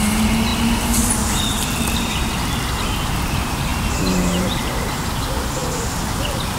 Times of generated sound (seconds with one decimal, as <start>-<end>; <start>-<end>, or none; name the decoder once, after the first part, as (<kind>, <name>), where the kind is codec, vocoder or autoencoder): 0.5-2.9 (vocoder, BigVGAN v2); 5.6-6.6